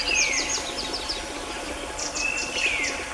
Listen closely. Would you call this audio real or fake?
real